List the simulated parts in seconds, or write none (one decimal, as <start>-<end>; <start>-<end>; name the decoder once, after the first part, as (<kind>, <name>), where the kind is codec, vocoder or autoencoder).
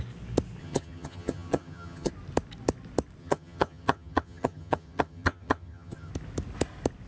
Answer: 0.6-2.1 (vocoder, HiFi-GAN); 3.2-6.1